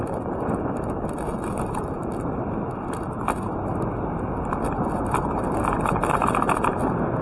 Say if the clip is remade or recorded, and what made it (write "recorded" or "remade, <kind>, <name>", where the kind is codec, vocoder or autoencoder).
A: recorded